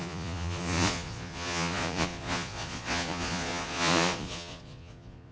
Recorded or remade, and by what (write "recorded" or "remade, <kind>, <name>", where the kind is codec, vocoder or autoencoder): remade, vocoder, Vocos